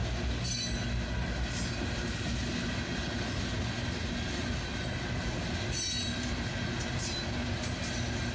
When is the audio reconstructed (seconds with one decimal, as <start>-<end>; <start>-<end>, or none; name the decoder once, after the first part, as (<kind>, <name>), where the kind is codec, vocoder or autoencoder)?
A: none